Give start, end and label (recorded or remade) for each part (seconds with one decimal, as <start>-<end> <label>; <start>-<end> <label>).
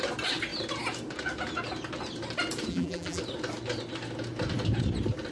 0.0-2.7 recorded; 2.7-3.2 remade; 3.2-5.3 recorded